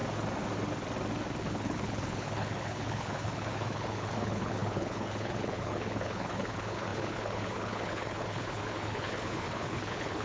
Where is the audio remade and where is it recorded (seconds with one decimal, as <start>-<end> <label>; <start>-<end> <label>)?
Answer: 0.0-1.4 recorded; 1.4-10.2 remade